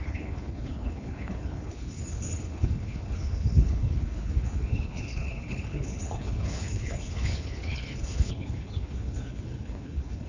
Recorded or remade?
remade